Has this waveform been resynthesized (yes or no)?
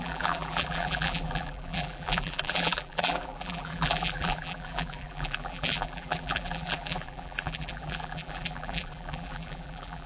yes